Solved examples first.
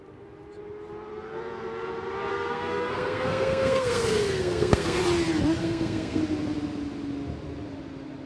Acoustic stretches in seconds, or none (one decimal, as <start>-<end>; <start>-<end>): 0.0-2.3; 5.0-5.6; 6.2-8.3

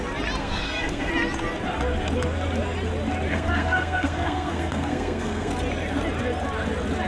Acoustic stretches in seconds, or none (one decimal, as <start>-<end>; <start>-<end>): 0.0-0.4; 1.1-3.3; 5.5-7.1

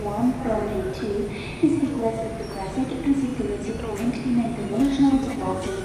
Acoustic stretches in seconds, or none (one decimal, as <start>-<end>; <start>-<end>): 0.0-1.6; 2.3-4.7

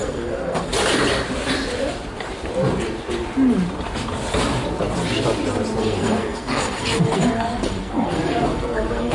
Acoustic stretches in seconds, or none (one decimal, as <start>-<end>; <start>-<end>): 0.7-5.8

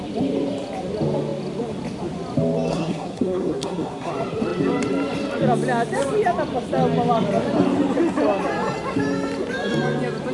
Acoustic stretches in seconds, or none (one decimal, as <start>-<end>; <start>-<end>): 0.0-2.7; 4.1-10.3

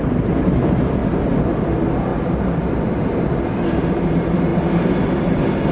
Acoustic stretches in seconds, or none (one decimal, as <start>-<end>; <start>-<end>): 0.0-5.7